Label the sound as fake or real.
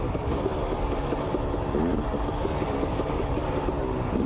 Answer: real